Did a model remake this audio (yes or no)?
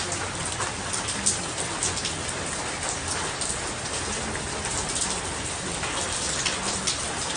no